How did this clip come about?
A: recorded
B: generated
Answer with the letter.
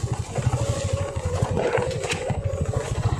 B